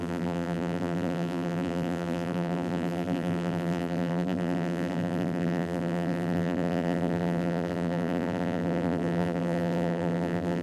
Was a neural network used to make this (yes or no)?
yes